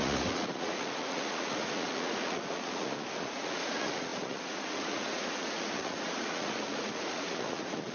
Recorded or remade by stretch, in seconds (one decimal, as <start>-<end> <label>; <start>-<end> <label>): 0.0-7.9 remade